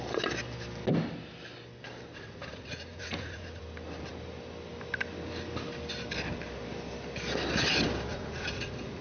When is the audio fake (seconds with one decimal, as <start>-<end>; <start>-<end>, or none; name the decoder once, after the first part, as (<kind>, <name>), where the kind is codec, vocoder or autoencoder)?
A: 2.1-3.6 (vocoder, Vocos); 8.1-9.0